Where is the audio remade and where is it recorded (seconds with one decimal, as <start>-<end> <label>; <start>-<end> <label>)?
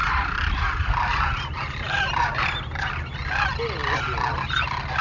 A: 0.0-3.0 remade; 3.0-5.0 recorded